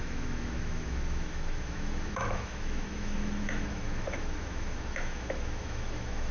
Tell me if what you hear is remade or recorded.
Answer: remade